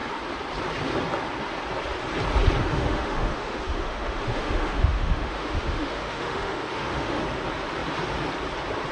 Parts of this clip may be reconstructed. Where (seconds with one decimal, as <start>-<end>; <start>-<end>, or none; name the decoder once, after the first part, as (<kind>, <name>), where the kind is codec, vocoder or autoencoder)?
2.6-7.2 (autoencoder, DAC-VAE)

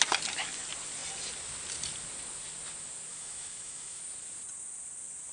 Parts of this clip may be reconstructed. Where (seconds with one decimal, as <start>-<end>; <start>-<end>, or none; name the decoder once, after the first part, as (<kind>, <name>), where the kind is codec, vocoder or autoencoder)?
3.1-4.0 (autoencoder, DAC-VAE)

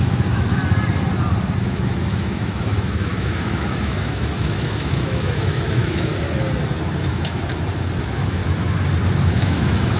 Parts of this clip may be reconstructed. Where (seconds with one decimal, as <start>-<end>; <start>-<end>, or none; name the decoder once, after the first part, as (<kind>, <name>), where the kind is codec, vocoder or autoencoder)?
0.0-0.6 (autoencoder, DAC-VAE); 1.6-6.1; 7.0-7.4; 8.0-8.4; 9.2-10.0

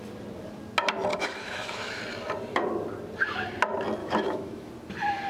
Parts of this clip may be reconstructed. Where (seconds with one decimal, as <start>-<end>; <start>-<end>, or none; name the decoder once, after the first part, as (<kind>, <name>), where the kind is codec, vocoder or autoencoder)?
1.1-2.0 (autoencoder, DAC-VAE); 4.0-4.7

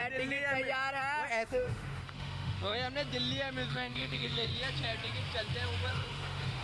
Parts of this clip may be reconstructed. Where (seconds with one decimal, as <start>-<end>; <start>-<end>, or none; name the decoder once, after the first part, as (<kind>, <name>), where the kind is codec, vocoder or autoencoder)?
1.3-2.7 (autoencoder, DAC-VAE); 3.7-4.5; 5.9-6.6